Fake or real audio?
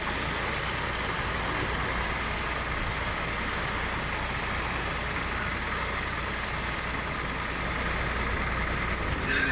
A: real